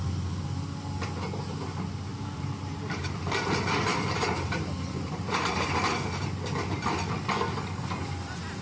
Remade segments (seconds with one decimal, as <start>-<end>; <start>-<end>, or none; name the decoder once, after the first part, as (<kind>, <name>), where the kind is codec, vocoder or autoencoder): 2.1-3.5 (vocoder, BigVGAN v2); 3.9-5.9